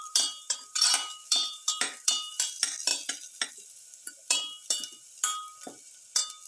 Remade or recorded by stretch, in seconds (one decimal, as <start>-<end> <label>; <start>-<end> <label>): 0.0-2.9 remade; 2.9-3.5 recorded; 3.5-5.3 remade; 5.3-6.5 recorded